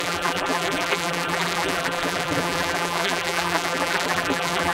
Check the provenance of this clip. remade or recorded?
remade